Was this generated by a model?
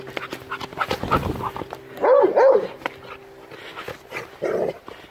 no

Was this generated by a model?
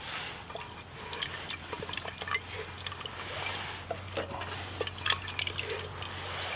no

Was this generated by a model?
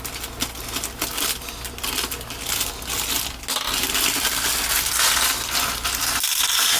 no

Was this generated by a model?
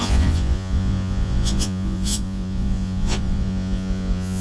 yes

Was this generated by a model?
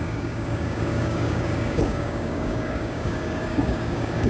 yes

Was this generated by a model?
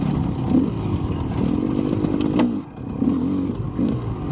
no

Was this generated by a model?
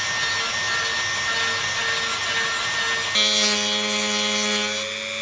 no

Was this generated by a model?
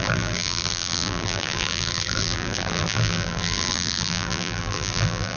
yes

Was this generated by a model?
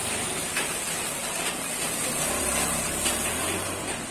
yes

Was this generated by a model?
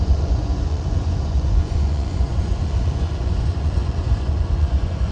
yes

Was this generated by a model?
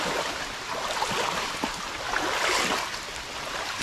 no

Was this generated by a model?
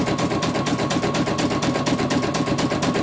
no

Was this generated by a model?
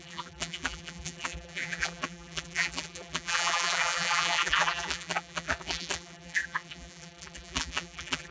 yes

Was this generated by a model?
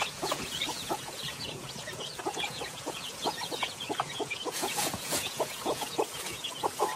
yes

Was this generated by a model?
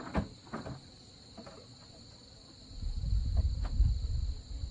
no